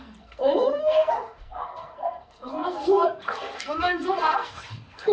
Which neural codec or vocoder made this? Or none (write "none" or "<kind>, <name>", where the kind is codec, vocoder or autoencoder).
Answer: codec, SNAC